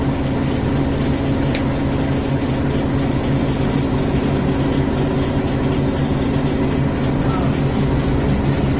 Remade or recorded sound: recorded